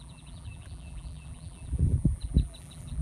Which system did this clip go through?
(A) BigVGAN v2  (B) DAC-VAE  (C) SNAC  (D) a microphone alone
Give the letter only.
A